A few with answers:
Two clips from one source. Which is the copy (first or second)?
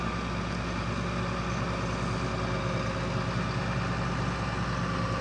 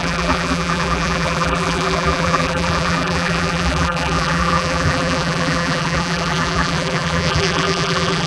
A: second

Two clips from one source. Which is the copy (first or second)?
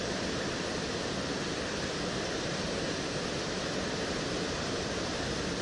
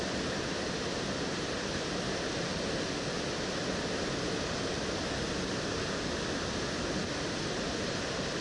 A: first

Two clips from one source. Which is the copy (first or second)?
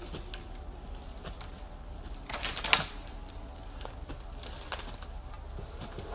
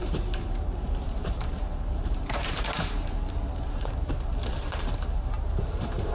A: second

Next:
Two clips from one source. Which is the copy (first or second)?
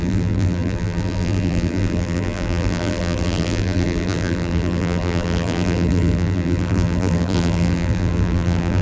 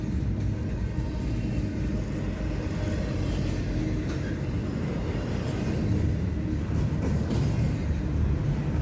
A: first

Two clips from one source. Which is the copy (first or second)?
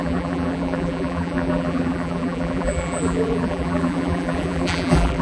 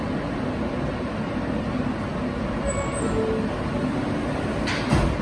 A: first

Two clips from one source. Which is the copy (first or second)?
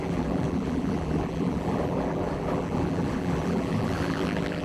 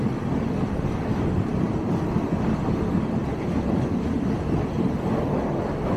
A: first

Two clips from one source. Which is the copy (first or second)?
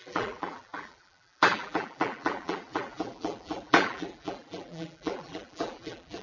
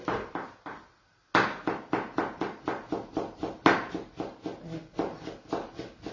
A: first